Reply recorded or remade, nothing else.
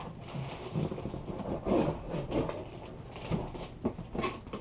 recorded